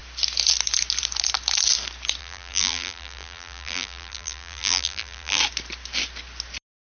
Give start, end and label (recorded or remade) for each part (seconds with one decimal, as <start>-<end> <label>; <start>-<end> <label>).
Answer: 0.0-2.2 recorded; 2.2-5.4 remade; 5.4-6.9 recorded